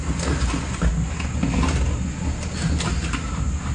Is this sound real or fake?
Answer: real